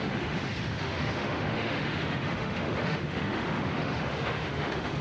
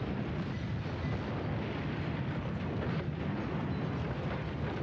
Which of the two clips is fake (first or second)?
first